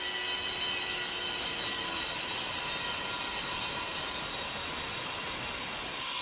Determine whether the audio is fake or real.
real